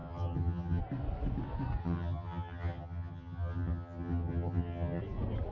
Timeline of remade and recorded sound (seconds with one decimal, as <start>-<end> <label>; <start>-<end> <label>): 0.0-0.8 remade; 0.8-1.8 recorded; 1.8-5.0 remade; 5.0-5.5 recorded